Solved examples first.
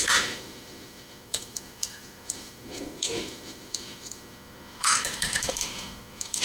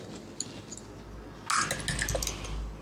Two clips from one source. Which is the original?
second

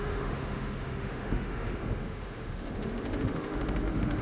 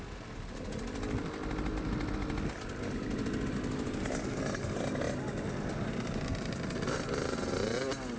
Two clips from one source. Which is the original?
second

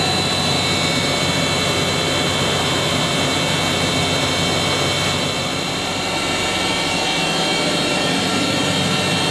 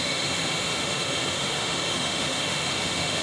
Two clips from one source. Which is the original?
first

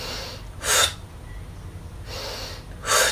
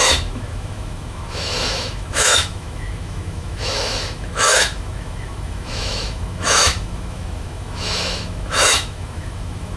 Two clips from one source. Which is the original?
first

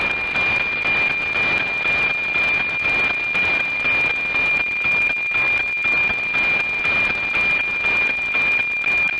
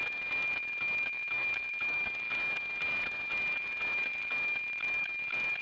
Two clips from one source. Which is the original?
first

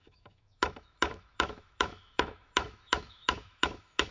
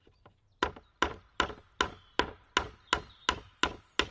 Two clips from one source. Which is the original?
second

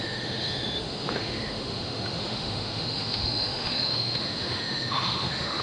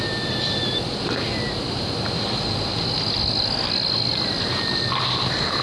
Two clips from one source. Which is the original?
second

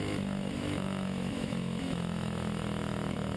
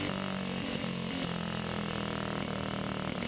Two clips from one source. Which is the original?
second